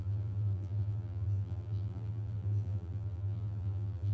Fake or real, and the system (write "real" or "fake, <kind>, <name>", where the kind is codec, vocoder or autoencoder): fake, vocoder, BigVGAN v2